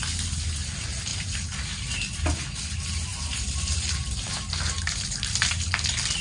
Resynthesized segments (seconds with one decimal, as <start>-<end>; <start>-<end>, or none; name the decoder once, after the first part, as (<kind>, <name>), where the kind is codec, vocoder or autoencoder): 1.1-1.7 (vocoder, BigVGAN v2); 3.1-5.7